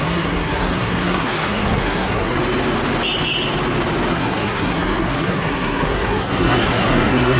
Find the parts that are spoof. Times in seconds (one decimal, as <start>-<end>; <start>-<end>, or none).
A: 0.0-2.4; 4.1-7.4